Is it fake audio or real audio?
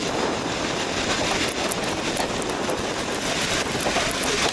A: real